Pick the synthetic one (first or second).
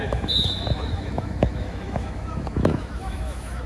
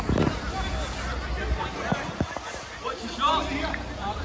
first